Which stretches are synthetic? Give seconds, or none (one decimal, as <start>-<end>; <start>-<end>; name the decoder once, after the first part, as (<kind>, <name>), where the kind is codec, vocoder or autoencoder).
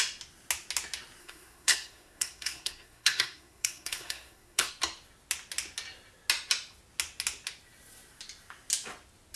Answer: 1.2-4.7 (codec, SNAC)